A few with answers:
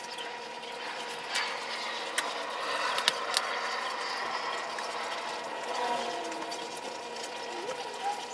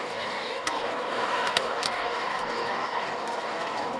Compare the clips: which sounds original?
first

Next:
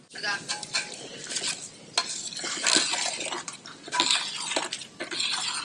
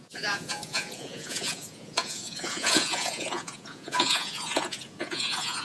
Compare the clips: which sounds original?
first